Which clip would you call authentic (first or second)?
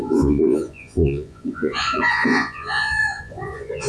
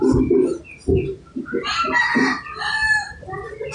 second